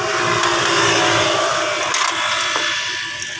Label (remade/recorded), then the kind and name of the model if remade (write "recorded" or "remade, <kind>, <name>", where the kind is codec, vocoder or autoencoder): recorded